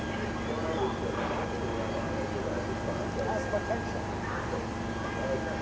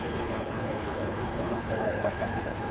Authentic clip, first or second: first